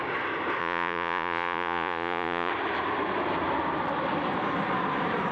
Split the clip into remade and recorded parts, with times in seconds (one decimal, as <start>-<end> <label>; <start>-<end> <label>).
0.0-0.6 recorded; 0.6-2.5 remade; 2.5-5.3 recorded

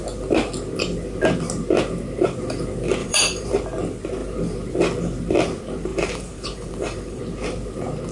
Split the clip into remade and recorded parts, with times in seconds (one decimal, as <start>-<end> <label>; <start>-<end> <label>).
0.0-3.0 recorded; 3.0-3.5 remade; 3.5-5.9 recorded; 5.9-7.2 remade; 7.2-8.1 recorded

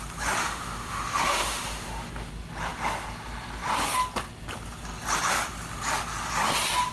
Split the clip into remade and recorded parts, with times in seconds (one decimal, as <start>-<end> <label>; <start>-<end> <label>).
0.0-0.4 recorded; 0.4-2.3 remade; 2.3-6.9 recorded

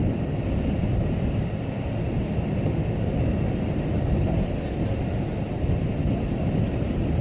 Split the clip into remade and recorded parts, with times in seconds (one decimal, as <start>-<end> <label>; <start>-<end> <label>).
0.0-7.2 recorded